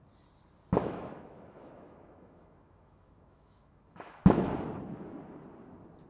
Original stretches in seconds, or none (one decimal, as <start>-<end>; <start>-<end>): 0.0-0.8; 4.5-6.1